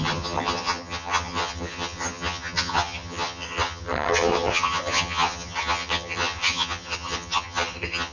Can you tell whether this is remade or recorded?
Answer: remade